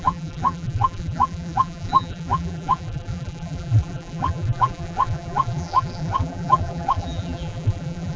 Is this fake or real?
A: fake